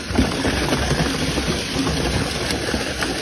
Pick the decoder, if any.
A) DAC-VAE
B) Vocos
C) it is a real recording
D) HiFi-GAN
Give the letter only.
C